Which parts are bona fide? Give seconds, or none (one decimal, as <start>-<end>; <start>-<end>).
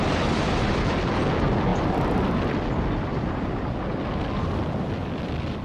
0.0-5.6